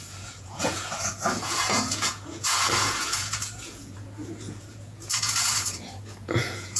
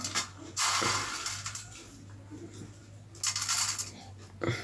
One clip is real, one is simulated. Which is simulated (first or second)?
first